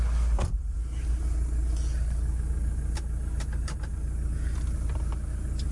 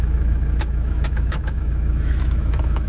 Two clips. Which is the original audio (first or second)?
first